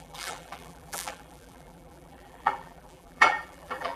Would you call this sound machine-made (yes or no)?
yes